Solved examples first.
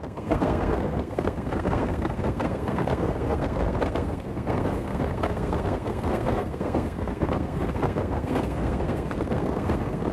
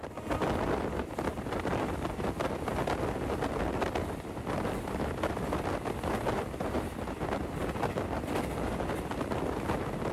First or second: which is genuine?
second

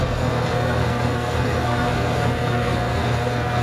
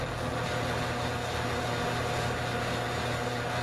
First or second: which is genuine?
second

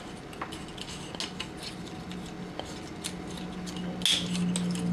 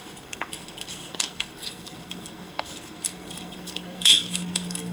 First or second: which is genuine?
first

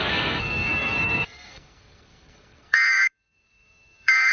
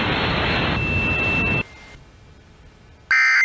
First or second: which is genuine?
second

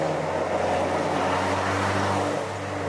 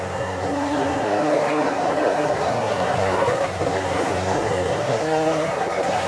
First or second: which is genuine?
first